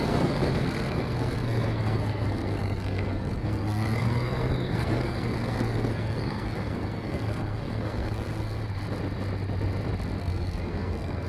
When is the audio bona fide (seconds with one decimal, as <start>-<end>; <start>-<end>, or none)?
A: 8.6-10.2